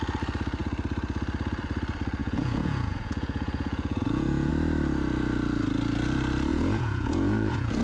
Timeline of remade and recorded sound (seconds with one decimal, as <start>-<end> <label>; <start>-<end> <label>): 0.0-2.2 recorded; 2.2-4.5 remade; 4.5-6.5 recorded; 6.5-7.8 remade